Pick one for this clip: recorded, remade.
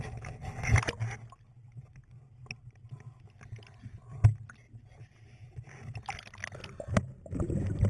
recorded